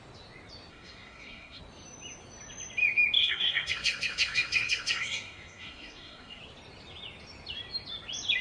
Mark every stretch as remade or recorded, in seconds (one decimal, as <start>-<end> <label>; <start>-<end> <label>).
0.0-0.7 recorded; 0.7-1.6 remade; 1.6-3.2 recorded; 3.2-6.4 remade; 6.4-8.4 recorded